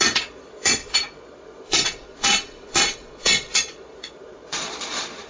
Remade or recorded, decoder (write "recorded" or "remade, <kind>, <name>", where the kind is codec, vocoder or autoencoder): remade, vocoder, Vocos